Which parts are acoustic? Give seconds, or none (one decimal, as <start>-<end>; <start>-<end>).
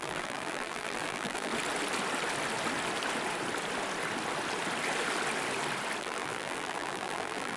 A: 1.5-6.0